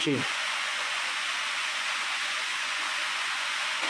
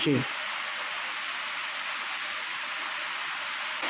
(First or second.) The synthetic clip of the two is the first